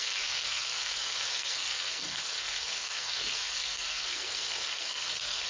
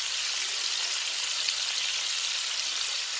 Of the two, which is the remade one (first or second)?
first